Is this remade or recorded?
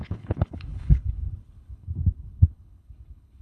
remade